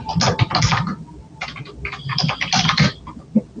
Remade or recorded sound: recorded